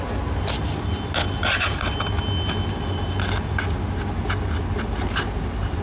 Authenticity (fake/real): real